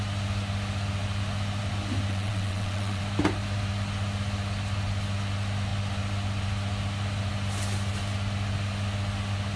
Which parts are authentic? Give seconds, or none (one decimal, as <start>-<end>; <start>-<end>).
0.0-2.1; 3.0-9.6